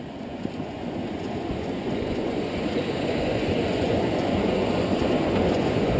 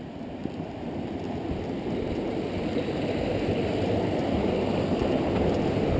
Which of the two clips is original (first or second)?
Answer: second